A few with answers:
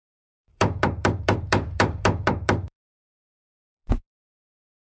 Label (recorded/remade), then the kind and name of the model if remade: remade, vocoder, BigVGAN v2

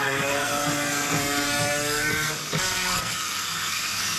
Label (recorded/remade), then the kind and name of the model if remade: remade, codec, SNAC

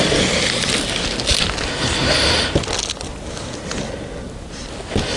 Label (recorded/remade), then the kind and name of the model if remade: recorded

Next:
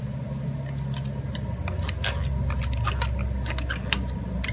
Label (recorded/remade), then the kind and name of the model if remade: recorded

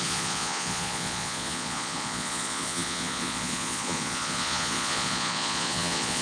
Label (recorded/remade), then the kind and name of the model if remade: remade, vocoder, Vocos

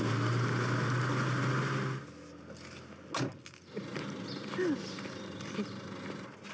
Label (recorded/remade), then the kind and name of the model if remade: recorded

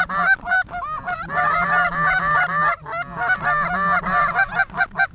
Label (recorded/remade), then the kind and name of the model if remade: recorded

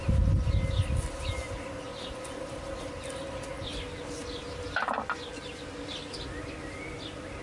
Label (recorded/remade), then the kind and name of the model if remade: recorded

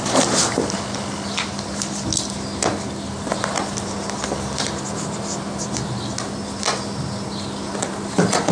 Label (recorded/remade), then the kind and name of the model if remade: recorded